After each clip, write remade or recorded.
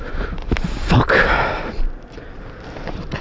remade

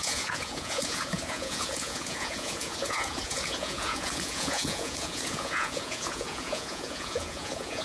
remade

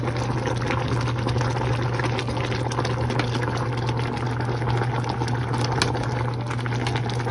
recorded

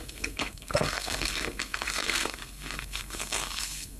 remade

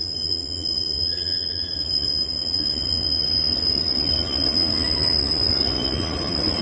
remade